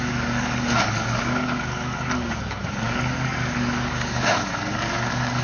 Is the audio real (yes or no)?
no